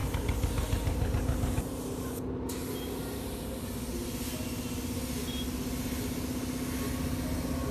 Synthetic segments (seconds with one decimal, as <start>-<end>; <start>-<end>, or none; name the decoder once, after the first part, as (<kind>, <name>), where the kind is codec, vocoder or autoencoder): none